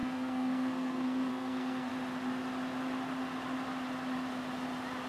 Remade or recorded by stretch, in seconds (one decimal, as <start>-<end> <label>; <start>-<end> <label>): 0.0-1.9 remade; 1.9-5.1 recorded